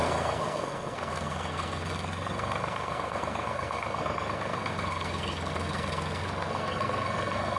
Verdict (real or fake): fake